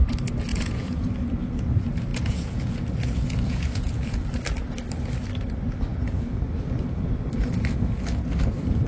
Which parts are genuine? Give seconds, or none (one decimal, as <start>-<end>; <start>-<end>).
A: 0.0-0.5; 1.1-2.1; 4.2-5.9; 6.4-8.9